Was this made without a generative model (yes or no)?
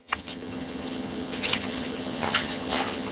no